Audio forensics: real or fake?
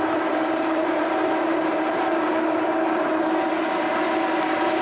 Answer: fake